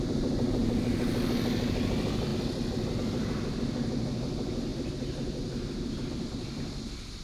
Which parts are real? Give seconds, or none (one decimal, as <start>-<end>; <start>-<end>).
0.0-4.7; 6.1-7.2